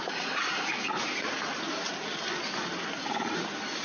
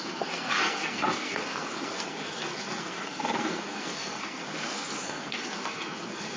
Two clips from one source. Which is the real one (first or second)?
first